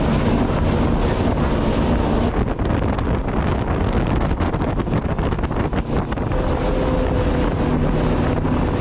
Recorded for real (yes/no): yes